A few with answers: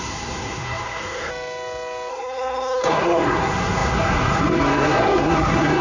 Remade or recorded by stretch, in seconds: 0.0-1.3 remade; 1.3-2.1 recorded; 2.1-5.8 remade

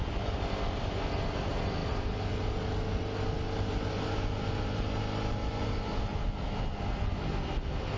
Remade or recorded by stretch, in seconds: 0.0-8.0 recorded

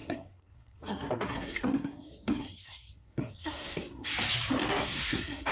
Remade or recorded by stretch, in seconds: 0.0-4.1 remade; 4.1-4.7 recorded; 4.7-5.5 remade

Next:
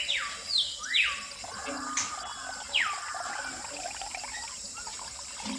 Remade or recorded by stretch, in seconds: 0.0-5.6 recorded

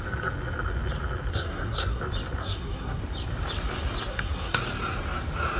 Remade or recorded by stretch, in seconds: 0.0-1.3 recorded; 1.3-2.0 remade; 2.0-2.4 recorded; 2.4-3.0 remade; 3.0-4.1 recorded; 4.1-4.6 remade; 4.6-5.6 recorded

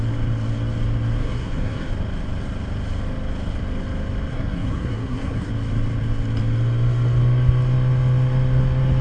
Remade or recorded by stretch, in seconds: 0.0-1.2 recorded; 1.2-1.9 remade; 1.9-4.3 recorded; 4.3-5.5 remade; 5.5-9.0 recorded

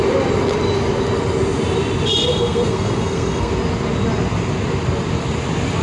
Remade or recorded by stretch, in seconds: 0.0-2.3 recorded; 2.3-3.5 remade; 3.5-5.8 recorded